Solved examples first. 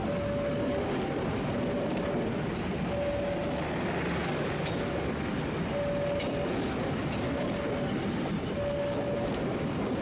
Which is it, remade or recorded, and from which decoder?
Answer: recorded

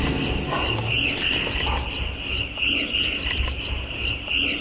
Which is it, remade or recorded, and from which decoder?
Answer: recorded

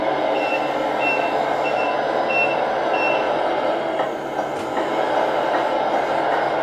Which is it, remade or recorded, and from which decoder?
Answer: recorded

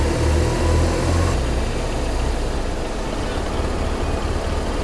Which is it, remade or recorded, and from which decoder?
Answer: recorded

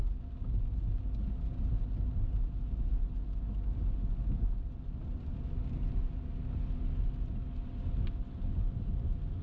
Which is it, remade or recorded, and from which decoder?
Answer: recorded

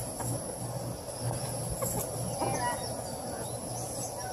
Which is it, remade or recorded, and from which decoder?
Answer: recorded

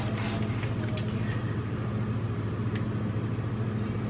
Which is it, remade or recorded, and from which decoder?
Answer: recorded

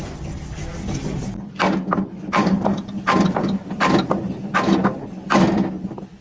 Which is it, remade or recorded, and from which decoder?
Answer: recorded